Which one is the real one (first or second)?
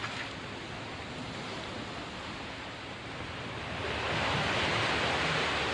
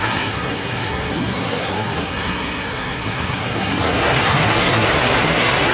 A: first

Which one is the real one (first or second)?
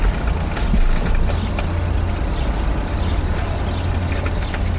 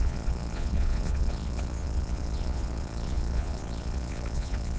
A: first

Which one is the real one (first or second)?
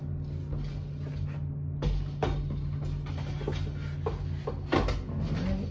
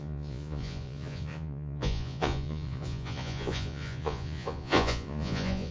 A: first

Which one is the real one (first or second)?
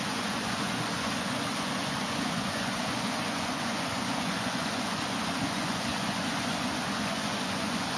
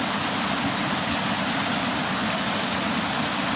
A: second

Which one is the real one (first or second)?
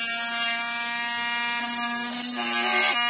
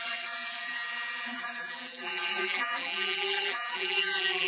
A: first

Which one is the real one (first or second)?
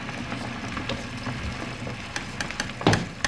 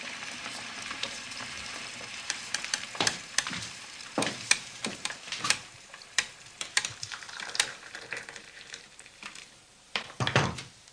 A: first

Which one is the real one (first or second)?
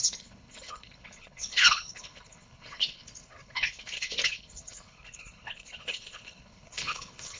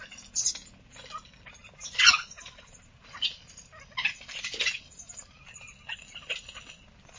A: second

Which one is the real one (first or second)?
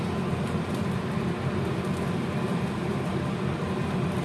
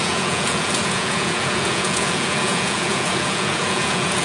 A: first